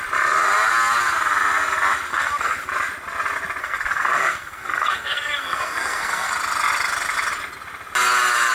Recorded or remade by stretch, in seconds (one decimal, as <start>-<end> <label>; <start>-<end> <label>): 0.0-2.1 recorded; 2.1-2.7 remade; 2.7-3.6 recorded; 3.6-6.3 remade; 6.3-8.5 recorded